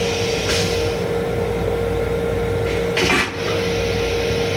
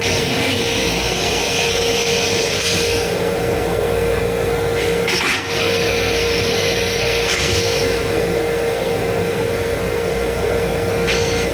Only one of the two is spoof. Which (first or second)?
second